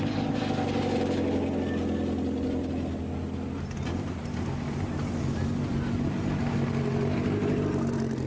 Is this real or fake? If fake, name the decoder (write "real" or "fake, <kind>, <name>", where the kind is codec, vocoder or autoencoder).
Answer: real